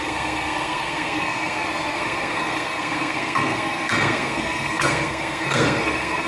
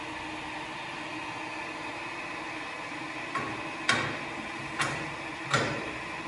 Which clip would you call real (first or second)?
second